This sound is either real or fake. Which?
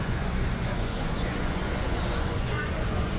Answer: fake